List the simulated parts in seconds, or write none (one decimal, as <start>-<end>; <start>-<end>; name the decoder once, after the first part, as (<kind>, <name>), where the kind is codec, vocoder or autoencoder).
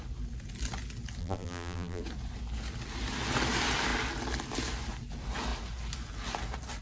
1.2-2.0 (vocoder, BigVGAN v2)